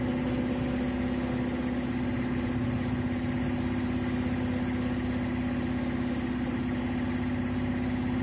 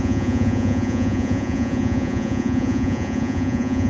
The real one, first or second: first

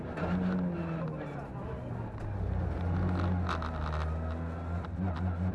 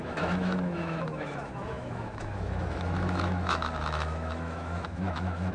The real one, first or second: first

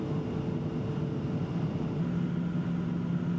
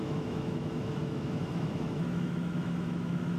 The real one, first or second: first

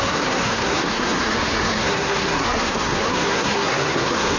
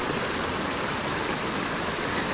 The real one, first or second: second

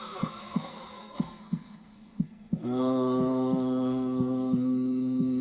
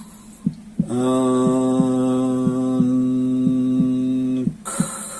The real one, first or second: second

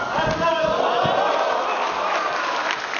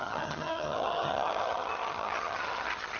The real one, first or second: first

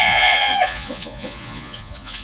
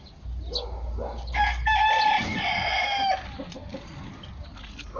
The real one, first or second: second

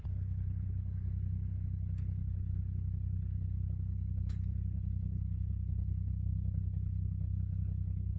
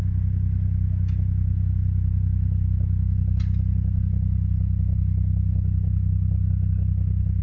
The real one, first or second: second